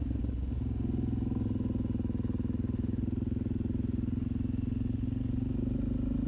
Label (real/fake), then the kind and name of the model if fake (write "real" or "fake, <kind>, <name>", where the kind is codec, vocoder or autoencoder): real